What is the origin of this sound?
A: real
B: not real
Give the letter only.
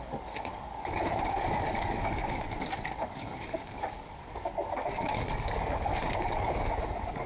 B